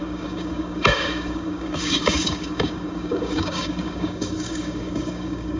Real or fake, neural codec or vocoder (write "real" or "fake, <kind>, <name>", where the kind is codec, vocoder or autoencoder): fake, codec, DAC